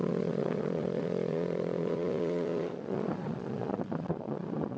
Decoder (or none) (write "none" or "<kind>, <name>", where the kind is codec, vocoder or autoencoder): vocoder, Vocos